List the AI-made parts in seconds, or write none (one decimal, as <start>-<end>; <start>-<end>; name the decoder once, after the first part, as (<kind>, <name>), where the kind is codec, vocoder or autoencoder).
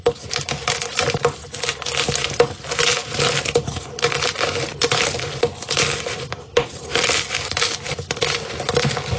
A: none